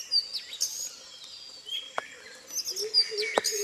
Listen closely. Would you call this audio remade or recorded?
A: recorded